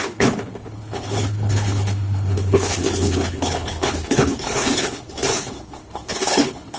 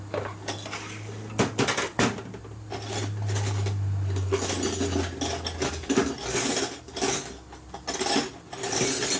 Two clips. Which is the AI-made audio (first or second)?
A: first